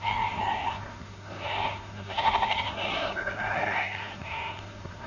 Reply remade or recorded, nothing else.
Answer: remade